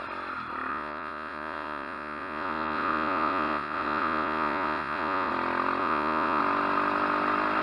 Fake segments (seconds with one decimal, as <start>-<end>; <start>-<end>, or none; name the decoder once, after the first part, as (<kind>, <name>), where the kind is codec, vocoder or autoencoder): 0.7-5.3 (vocoder, Vocos); 5.8-6.4